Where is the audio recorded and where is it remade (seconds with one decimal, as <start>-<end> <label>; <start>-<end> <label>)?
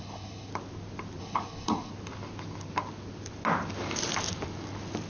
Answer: 0.0-0.5 remade; 0.5-1.2 recorded; 1.2-1.9 remade; 1.9-5.1 recorded